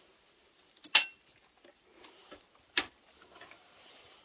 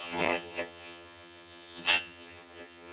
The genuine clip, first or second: first